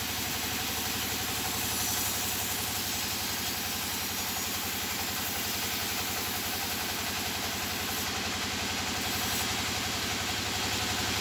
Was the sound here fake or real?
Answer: real